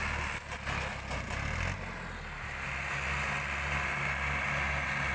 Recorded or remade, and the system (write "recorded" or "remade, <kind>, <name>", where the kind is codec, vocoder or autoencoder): recorded